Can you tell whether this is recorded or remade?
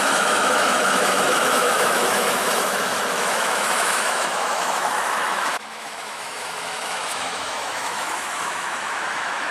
remade